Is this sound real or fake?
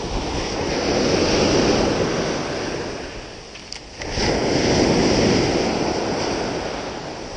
real